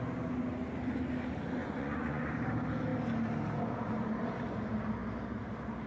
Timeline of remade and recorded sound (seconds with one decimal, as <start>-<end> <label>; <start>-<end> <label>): 0.0-1.6 recorded; 1.6-2.3 remade; 2.3-5.9 recorded